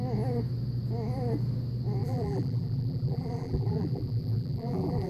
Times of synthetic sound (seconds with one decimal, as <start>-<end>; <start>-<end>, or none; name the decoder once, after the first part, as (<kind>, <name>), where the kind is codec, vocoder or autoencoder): 2.0-5.1 (vocoder, BigVGAN v2)